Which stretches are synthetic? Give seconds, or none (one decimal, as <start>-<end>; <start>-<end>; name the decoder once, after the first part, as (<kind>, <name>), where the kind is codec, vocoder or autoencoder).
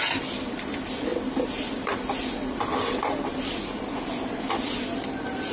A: none